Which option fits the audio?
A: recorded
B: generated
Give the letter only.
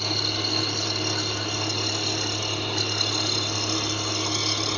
A